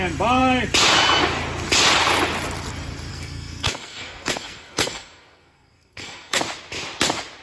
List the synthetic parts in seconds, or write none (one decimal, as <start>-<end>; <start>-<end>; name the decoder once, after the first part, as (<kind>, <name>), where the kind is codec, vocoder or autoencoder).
3.1-6.4 (codec, SNAC)